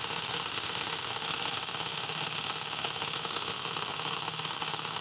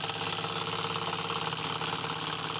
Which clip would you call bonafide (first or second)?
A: second